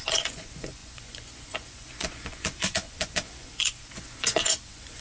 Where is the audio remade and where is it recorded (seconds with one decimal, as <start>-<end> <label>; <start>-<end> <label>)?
0.0-5.0 remade